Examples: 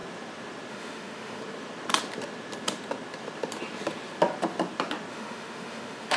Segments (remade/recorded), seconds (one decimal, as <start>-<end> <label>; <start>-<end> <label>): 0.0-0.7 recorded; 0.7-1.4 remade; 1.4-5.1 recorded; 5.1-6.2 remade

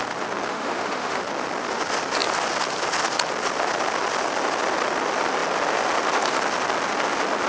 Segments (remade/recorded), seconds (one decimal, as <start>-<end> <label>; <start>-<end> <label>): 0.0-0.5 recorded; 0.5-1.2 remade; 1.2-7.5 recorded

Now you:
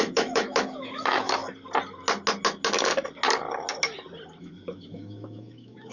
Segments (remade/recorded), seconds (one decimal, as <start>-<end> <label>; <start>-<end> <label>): 0.0-1.4 remade; 1.4-4.4 recorded; 4.4-5.9 remade

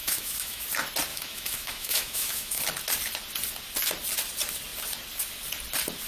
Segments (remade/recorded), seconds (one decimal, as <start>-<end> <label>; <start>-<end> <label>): 0.0-0.6 remade; 0.6-1.1 recorded; 1.1-2.6 remade; 2.6-6.1 recorded

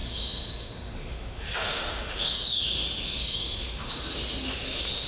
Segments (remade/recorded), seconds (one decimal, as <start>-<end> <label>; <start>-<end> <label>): 0.0-5.1 remade

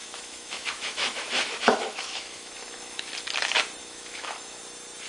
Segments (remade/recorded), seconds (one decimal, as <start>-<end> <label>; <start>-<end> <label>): 0.0-3.1 remade; 3.1-3.8 recorded; 3.8-4.6 remade; 4.6-5.1 recorded